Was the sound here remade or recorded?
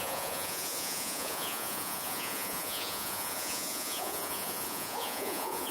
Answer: remade